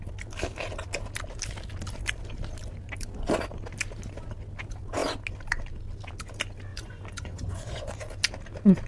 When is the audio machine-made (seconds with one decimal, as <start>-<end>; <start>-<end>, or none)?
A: 6.7-7.9